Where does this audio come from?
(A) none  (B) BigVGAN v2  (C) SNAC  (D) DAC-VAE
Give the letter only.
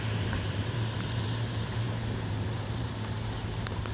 B